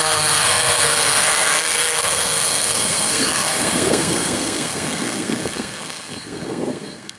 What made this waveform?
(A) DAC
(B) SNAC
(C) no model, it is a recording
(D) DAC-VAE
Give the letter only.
B